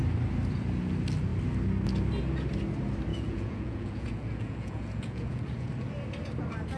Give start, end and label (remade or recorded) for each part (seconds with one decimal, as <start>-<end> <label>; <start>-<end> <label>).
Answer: 0.0-3.1 recorded; 3.1-5.7 remade; 5.7-6.8 recorded